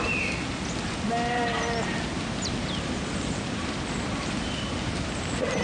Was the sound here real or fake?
real